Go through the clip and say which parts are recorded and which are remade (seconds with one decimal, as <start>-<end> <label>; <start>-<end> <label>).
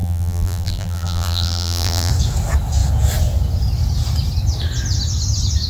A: 0.0-2.1 remade; 2.1-5.7 recorded